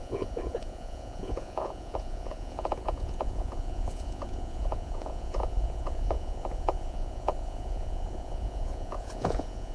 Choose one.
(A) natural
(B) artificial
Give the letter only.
B